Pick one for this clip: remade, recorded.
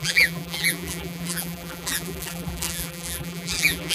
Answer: remade